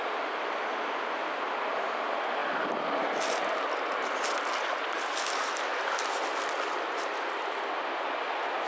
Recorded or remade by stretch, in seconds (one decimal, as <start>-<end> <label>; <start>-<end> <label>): 0.0-8.7 recorded